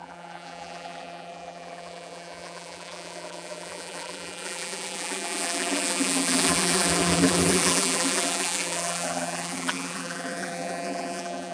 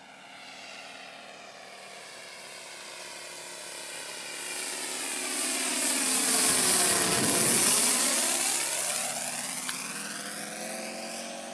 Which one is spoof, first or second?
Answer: first